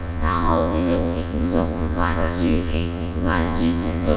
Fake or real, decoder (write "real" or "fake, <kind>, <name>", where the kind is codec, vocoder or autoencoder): fake, vocoder, Vocos